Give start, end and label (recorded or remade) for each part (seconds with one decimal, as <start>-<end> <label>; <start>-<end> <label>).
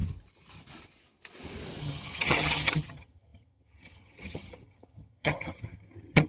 0.0-1.8 recorded; 1.8-6.3 remade